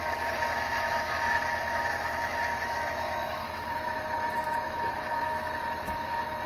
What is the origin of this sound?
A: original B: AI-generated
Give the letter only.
B